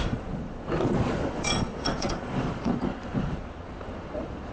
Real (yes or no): no